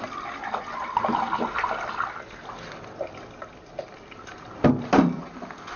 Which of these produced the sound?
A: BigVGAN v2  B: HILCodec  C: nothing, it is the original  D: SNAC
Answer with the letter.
C